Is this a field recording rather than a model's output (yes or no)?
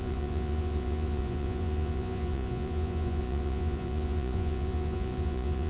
no